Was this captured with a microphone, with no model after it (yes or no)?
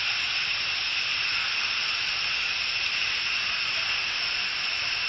yes